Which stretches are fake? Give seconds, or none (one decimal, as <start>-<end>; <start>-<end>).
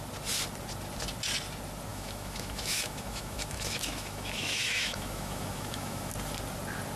1.9-6.1